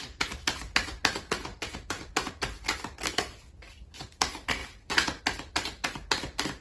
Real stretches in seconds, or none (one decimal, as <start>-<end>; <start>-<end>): 0.0-1.5; 2.3-4.6; 5.2-6.6